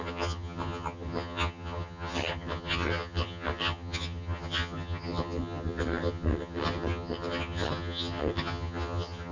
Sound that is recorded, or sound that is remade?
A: remade